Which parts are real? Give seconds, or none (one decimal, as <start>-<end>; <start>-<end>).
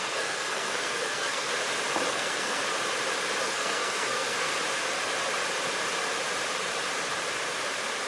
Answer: 1.5-2.1; 2.6-3.4; 4.5-8.1